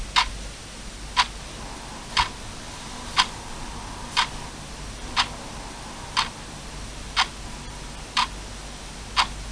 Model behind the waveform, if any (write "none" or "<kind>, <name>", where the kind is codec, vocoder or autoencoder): none